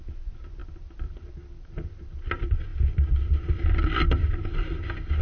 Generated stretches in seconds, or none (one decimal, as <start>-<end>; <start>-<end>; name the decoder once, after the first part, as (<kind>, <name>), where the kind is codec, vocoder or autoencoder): 0.6-1.3 (vocoder, BigVGAN v2)